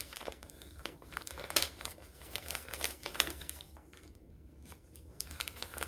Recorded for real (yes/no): no